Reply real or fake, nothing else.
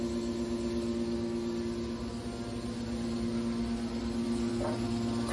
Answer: real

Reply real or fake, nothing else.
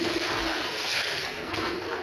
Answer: fake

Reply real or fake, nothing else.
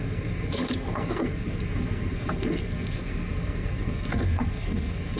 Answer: fake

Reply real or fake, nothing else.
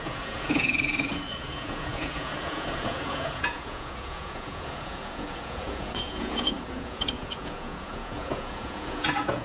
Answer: fake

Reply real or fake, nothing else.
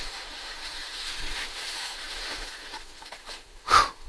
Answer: fake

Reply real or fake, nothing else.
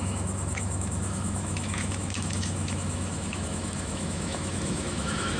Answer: fake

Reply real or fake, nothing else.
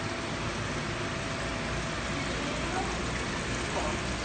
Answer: real